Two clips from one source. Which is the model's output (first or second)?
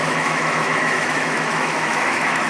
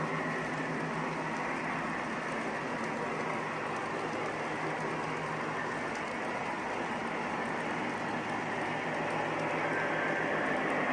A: first